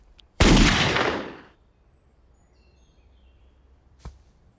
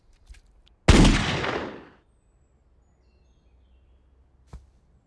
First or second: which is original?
second